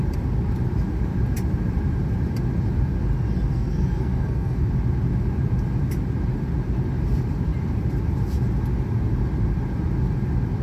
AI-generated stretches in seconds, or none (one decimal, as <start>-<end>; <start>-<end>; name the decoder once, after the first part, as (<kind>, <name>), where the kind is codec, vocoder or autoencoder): 3.5-4.7 (codec, SNAC)